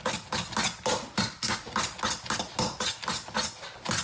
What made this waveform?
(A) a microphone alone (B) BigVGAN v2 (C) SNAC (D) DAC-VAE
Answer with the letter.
A